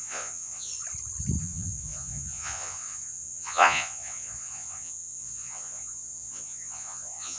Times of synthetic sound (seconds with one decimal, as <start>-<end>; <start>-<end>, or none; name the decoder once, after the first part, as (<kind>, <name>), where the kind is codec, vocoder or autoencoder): 0.0-0.7 (vocoder, Vocos); 1.4-7.4